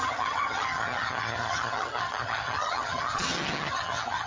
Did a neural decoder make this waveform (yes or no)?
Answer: yes